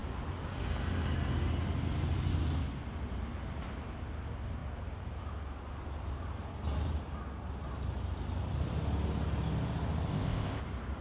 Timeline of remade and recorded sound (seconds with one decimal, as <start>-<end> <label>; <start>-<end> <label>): 0.0-10.1 recorded; 10.1-10.6 remade; 10.6-11.0 recorded